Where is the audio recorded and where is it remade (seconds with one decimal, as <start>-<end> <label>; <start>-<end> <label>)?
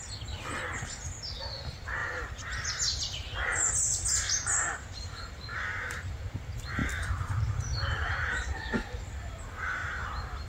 0.0-2.0 recorded; 2.0-2.7 remade; 2.7-5.5 recorded; 5.5-6.2 remade; 6.2-6.8 recorded; 6.8-8.0 remade; 8.0-9.8 recorded; 9.8-10.5 remade